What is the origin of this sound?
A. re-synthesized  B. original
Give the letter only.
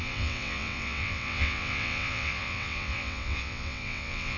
A